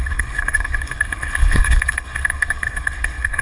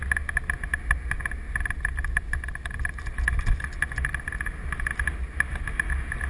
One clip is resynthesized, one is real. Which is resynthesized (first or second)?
first